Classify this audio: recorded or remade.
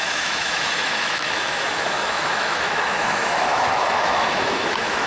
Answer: remade